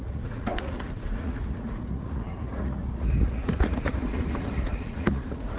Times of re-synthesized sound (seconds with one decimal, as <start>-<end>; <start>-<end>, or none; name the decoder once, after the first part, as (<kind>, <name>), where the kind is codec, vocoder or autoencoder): 0.0-5.6 (vocoder, Vocos)

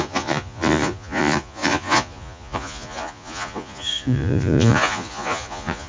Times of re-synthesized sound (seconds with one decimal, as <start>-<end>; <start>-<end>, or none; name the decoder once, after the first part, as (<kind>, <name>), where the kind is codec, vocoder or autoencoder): 0.0-5.9 (vocoder, Vocos)